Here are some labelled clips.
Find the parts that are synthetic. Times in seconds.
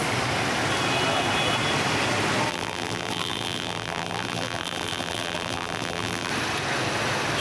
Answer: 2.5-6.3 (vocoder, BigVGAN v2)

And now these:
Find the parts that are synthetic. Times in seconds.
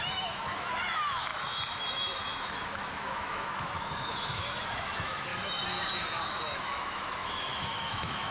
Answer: 0.0-5.3 (autoencoder, DAC-VAE); 6.3-8.3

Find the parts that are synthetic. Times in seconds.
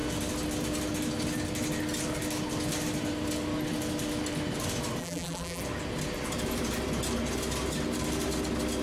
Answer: 5.0-5.6 (vocoder, BigVGAN v2)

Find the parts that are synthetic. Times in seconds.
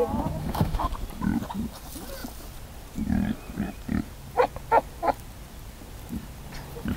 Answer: 0.4-0.9 (autoencoder, DAC-VAE)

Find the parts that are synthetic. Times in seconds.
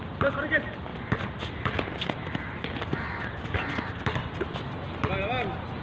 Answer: none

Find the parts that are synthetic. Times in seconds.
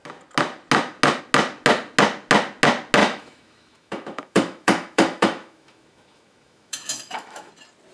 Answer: 3.0-7.5 (autoencoder, DAC-VAE)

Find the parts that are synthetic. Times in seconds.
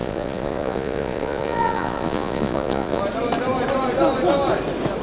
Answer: 0.0-3.0 (vocoder, Vocos)